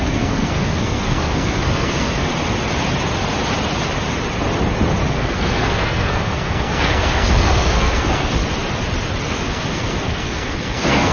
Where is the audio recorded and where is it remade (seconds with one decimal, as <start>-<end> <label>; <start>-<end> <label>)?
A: 0.0-2.3 remade; 2.3-5.1 recorded; 5.1-8.4 remade; 8.4-9.3 recorded; 9.3-11.1 remade